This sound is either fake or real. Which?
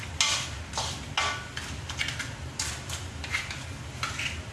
real